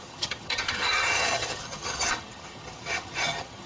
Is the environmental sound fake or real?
fake